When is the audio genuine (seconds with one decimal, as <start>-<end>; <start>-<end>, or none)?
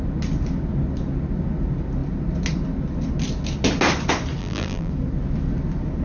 0.0-4.4; 4.9-6.0